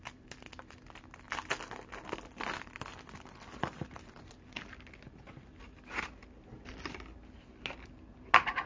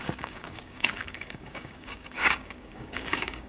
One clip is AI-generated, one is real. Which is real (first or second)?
first